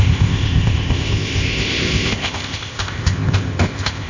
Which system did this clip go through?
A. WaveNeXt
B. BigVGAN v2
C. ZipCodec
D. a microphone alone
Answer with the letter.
C